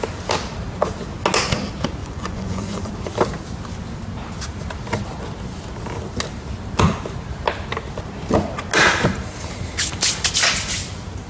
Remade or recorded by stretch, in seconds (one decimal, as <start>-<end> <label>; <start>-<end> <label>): 0.0-2.0 recorded; 2.0-2.9 remade; 2.9-11.3 recorded